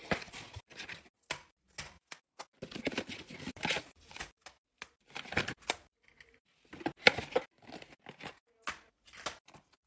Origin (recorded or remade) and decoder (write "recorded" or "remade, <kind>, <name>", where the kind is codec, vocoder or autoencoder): recorded